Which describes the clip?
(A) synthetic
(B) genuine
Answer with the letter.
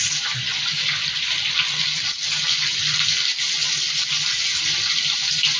B